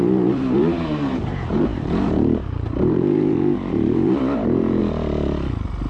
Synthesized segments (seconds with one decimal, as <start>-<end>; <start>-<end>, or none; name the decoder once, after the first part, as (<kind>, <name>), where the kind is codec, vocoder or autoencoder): 0.0-4.8 (vocoder, BigVGAN v2)